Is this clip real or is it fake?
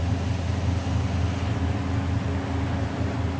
real